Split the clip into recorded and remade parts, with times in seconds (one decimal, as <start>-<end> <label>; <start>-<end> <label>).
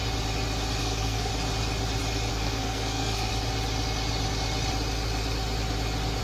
0.0-0.8 recorded; 0.8-1.3 remade; 1.3-2.3 recorded; 2.3-3.3 remade; 3.3-6.2 recorded